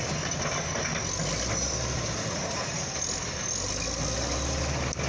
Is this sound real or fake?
real